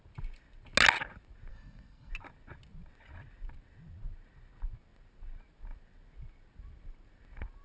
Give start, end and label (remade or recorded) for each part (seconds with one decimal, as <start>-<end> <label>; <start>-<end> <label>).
0.0-1.5 recorded; 1.5-2.1 remade; 2.1-7.6 recorded